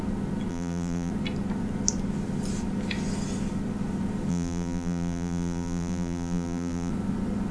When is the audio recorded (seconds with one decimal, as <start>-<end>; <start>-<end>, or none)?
0.0-0.5; 1.1-4.3; 6.9-7.5